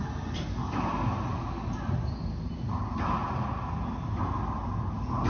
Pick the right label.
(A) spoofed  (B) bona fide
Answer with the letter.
B